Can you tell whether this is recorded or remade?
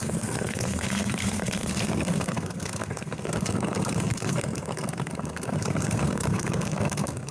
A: remade